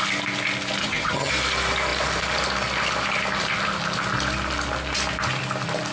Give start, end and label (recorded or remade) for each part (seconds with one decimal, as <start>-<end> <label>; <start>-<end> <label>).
0.0-0.8 recorded; 0.8-1.3 remade; 1.3-5.9 recorded